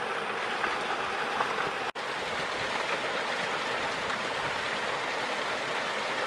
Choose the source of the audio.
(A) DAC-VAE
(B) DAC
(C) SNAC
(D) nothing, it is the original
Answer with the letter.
D